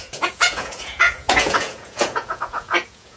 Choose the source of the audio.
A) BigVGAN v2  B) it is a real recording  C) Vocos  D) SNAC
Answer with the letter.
C